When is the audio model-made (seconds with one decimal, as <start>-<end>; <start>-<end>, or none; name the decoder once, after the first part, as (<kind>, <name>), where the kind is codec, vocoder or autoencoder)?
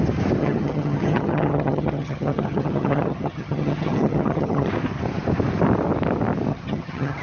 0.4-4.7 (vocoder, HiFi-GAN); 6.5-7.2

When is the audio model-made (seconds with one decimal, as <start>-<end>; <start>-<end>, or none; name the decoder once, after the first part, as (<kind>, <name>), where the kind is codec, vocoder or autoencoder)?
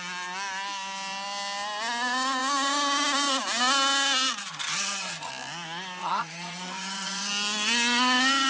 4.4-5.3 (vocoder, HiFi-GAN); 6.0-7.3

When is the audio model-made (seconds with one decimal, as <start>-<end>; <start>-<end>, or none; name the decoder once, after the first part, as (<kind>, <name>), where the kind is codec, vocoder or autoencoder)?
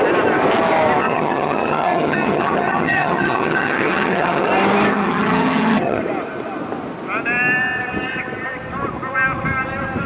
1.0-4.5 (vocoder, HiFi-GAN); 4.9-6.0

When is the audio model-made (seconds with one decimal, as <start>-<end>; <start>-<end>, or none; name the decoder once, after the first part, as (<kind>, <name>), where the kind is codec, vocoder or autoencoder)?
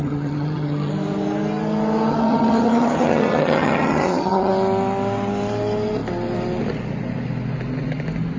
0.0-0.9 (vocoder, HiFi-GAN); 2.1-4.5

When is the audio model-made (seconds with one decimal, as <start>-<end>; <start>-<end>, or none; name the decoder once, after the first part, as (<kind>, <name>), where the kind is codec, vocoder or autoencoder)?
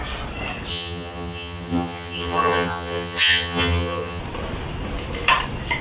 0.7-4.2 (vocoder, HiFi-GAN)